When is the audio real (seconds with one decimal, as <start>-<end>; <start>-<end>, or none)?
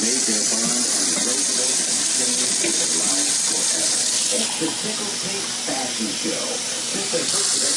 0.0-6.9